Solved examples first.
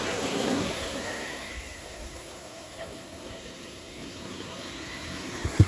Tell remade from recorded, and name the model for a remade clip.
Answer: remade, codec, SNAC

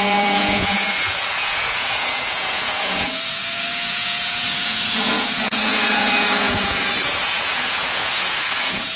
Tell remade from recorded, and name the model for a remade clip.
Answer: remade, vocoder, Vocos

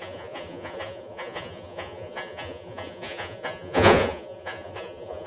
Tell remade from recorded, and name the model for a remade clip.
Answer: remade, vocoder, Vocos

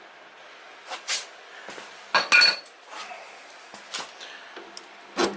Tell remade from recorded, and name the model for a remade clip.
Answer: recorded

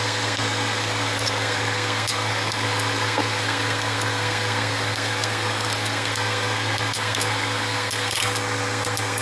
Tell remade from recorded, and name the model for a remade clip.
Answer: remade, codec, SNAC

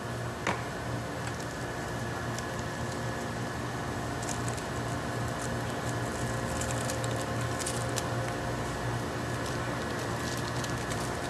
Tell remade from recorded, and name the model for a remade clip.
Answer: recorded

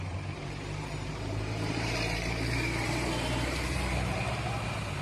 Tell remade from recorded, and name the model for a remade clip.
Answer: remade, vocoder, BigVGAN v2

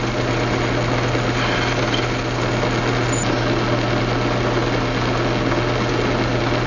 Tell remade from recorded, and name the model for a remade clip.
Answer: recorded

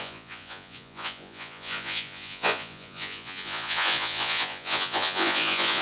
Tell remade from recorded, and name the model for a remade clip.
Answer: remade, vocoder, Vocos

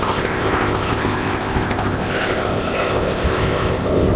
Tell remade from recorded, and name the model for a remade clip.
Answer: remade, codec, ZipCodec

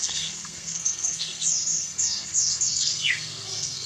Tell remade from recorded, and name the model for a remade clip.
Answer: remade, codec, SNAC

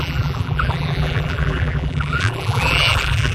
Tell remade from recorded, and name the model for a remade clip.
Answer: remade, vocoder, BigVGAN v2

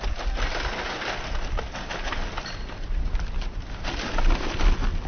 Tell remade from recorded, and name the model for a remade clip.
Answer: recorded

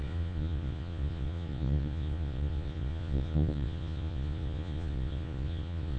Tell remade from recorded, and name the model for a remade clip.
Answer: remade, vocoder, Vocos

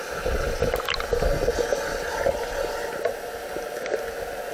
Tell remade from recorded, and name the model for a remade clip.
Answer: recorded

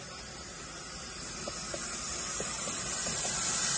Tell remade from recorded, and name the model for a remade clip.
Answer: recorded